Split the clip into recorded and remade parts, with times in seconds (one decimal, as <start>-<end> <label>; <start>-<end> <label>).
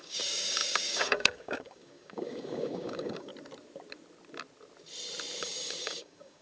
0.0-3.3 remade; 3.3-5.4 recorded; 5.4-6.4 remade